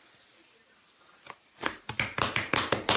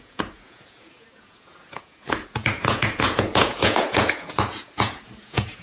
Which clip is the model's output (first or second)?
second